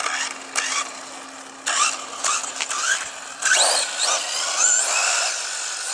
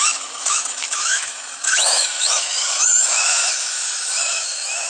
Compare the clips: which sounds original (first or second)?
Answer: first